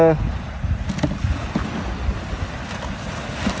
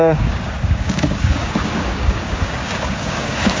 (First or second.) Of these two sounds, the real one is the first